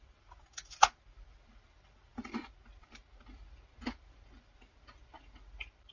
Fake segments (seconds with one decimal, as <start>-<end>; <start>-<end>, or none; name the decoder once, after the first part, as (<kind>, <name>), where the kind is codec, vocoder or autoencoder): none